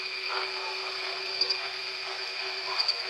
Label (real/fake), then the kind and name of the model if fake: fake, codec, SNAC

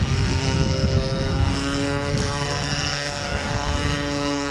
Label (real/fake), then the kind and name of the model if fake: fake, codec, SNAC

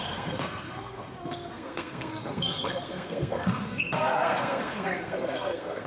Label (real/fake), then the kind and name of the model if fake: fake, codec, SNAC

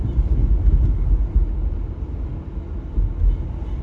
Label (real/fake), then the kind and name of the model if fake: real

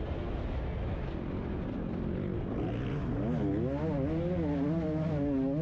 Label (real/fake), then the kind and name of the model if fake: real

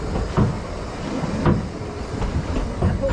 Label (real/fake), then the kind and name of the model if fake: real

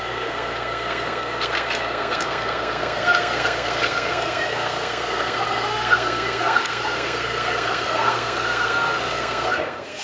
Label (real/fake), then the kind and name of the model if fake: fake, codec, SNAC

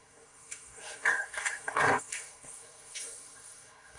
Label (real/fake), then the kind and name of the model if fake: fake, codec, SNAC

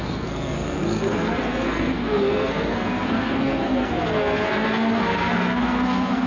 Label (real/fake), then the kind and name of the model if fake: fake, codec, SNAC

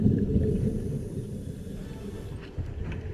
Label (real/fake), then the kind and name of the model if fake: real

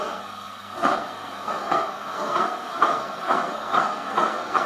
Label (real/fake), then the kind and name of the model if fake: fake, codec, SNAC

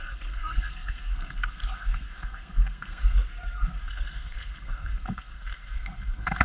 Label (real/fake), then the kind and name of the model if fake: fake, codec, SNAC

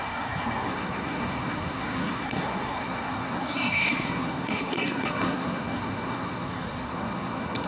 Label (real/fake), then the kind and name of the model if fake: fake, codec, SNAC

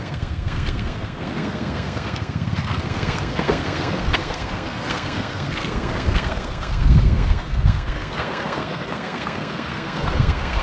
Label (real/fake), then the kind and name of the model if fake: fake, codec, SNAC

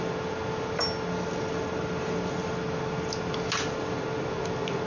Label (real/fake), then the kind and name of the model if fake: real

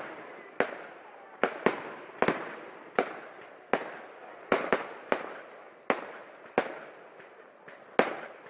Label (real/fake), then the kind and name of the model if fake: real